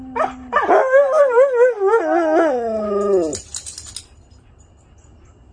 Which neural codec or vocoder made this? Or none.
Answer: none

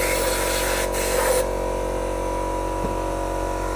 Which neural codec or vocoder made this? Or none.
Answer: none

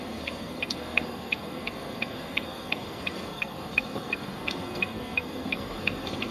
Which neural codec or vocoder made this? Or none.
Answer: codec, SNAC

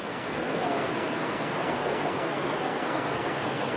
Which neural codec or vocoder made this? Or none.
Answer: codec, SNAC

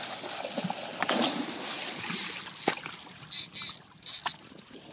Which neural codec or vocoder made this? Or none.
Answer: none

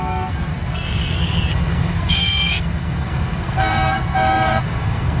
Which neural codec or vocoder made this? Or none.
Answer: codec, SNAC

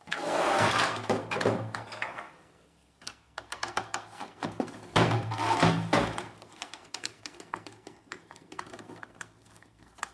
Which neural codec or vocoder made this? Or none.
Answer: codec, SNAC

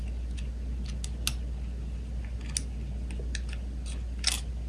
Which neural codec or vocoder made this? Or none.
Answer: none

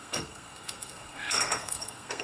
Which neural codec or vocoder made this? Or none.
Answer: codec, SNAC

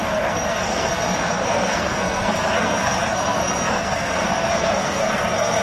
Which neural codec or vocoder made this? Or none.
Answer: codec, SNAC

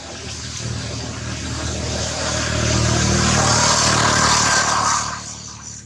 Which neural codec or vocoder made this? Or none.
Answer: none